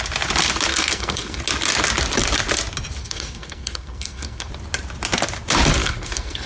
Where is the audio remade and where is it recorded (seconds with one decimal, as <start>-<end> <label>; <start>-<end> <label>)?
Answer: 0.0-0.7 recorded; 0.7-1.4 remade; 1.4-3.0 recorded; 3.0-4.5 remade; 4.5-5.8 recorded; 5.8-6.5 remade